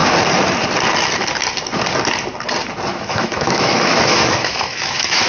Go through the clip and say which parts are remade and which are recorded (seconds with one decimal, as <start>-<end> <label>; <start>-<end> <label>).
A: 0.0-2.9 recorded; 2.9-5.3 remade